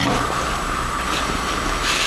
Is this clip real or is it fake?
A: real